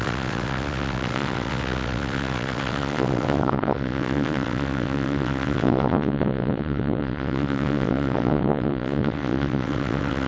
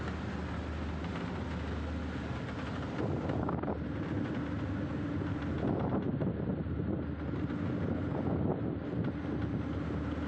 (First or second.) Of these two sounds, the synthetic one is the first